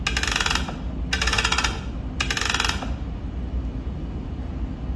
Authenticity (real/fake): real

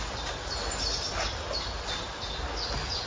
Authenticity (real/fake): real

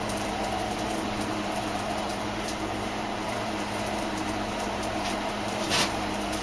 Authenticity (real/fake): fake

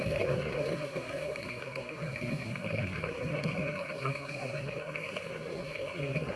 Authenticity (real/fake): fake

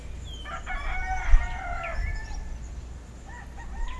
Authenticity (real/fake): real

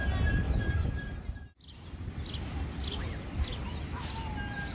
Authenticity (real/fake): real